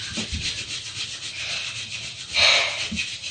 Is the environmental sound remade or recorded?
recorded